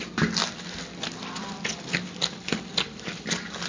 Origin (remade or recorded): recorded